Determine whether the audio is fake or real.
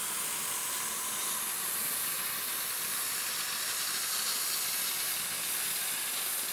real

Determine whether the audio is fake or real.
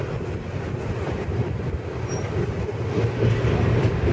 real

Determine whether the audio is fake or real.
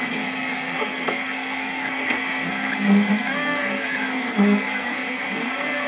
fake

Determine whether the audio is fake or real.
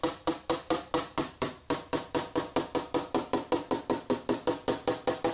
real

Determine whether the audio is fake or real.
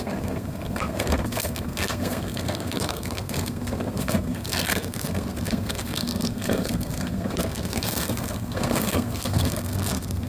fake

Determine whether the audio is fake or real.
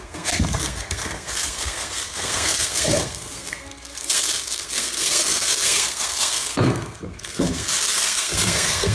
fake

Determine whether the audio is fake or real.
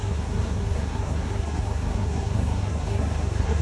fake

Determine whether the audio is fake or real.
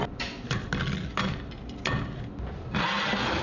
real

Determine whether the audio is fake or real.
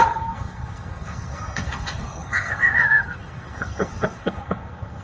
fake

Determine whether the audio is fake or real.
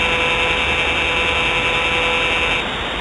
real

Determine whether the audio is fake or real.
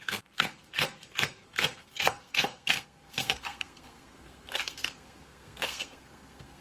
fake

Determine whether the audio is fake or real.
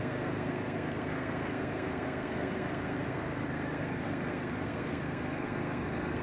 fake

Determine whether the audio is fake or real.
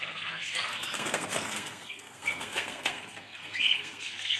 fake